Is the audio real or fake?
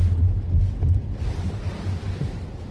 fake